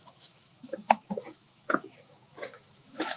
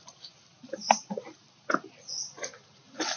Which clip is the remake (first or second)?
first